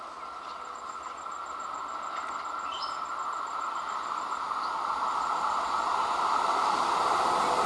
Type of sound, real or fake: real